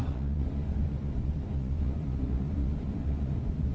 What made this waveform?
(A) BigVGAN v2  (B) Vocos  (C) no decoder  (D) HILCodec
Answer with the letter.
B